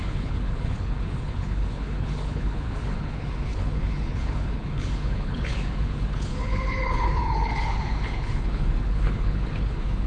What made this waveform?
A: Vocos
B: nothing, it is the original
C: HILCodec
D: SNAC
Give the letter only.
C